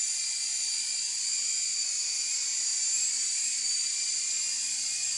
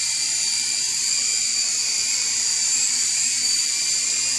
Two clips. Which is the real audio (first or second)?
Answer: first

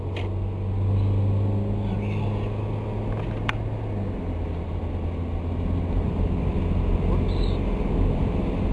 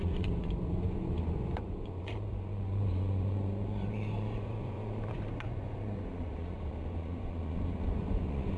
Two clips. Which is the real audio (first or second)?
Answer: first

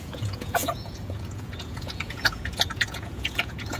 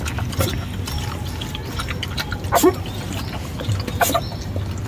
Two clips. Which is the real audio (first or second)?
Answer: second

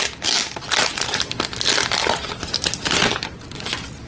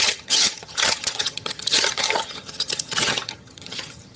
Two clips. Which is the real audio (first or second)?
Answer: first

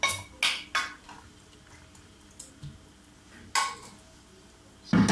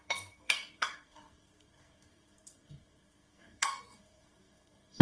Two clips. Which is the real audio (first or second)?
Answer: first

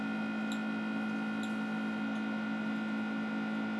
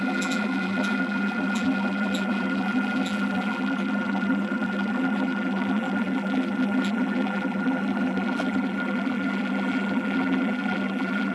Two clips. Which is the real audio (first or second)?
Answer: first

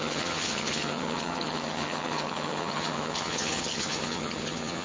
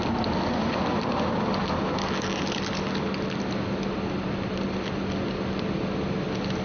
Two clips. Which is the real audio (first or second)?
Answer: second